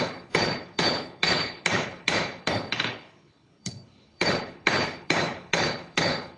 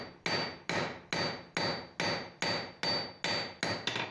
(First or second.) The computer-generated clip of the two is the first